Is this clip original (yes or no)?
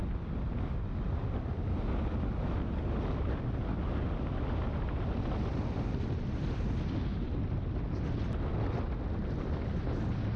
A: yes